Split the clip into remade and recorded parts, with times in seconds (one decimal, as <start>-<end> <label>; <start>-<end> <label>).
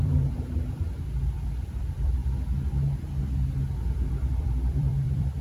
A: 0.0-2.2 remade; 2.2-4.1 recorded; 4.1-5.4 remade